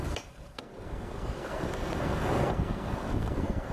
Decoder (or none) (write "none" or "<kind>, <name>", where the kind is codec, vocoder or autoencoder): codec, SNAC